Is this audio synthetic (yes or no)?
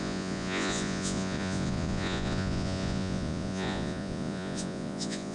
yes